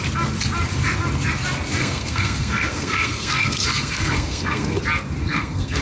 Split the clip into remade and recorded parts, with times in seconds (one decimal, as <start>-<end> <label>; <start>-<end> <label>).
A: 0.0-1.8 recorded; 1.8-4.8 remade; 4.8-5.2 recorded; 5.2-5.8 remade